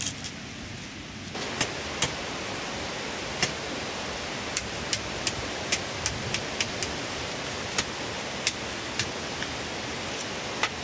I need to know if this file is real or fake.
real